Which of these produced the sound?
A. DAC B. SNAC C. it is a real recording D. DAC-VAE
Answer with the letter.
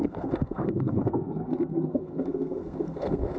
B